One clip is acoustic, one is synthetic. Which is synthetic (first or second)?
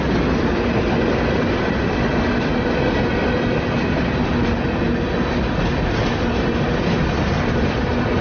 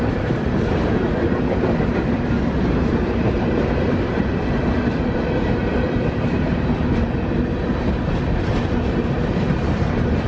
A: second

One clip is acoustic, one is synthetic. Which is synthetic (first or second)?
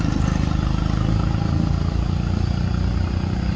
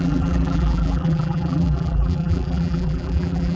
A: second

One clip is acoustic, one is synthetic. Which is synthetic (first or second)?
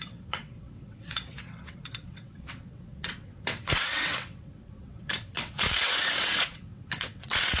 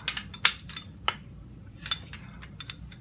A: first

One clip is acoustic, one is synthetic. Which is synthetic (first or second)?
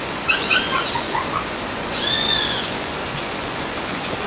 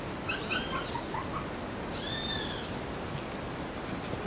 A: first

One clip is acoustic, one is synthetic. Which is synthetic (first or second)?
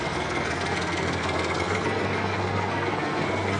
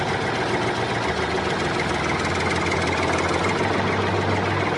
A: first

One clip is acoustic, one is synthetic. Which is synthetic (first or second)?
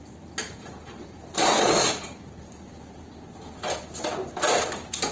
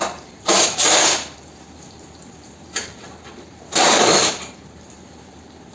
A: second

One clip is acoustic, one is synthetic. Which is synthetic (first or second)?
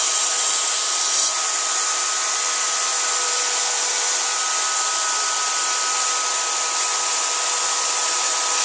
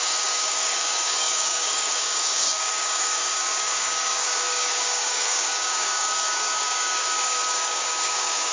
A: second